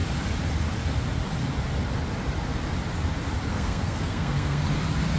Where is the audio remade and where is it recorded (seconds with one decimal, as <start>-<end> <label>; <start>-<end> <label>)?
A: 0.0-3.5 recorded; 3.5-4.6 remade; 4.6-5.2 recorded